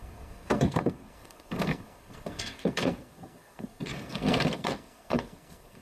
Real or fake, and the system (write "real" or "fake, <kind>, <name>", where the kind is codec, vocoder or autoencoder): fake, codec, SNAC